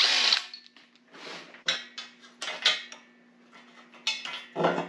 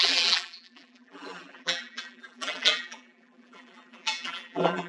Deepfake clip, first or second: second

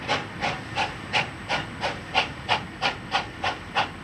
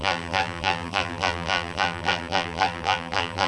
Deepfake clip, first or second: second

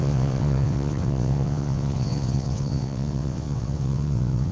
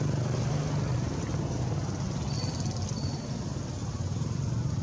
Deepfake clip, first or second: first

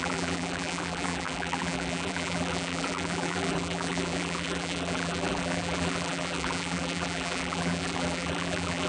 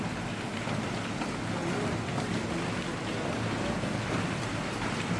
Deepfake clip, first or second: first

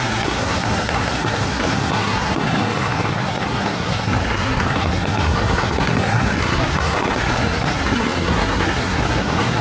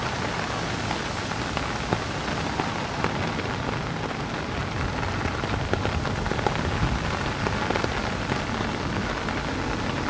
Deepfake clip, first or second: first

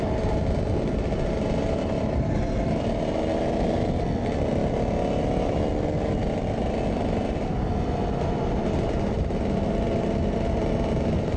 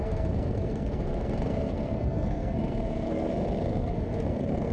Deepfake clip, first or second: second